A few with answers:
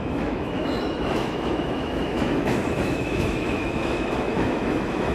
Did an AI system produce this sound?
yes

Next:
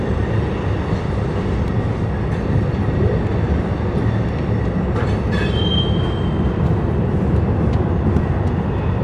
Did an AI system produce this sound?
no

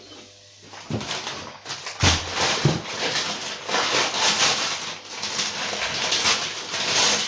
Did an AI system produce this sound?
no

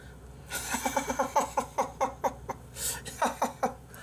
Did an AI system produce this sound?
no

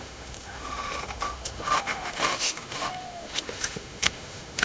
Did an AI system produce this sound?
yes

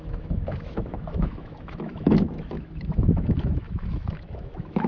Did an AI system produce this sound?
yes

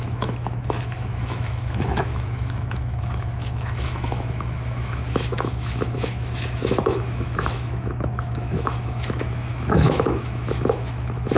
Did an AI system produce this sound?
yes